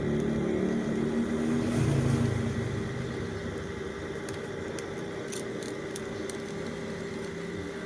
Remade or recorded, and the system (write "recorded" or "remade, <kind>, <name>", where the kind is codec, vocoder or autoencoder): recorded